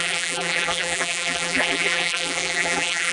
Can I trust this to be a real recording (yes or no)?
no